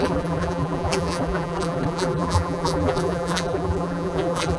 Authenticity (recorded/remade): remade